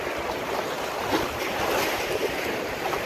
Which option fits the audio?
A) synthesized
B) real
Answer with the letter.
A